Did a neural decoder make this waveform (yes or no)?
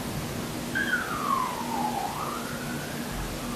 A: no